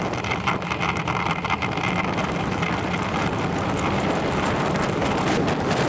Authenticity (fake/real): real